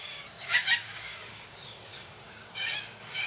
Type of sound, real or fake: fake